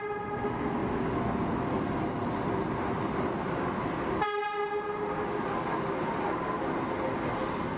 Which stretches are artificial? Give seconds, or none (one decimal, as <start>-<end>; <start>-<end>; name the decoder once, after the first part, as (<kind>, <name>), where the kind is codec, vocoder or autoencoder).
none